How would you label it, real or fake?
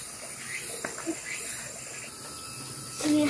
real